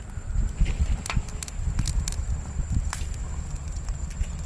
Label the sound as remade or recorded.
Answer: recorded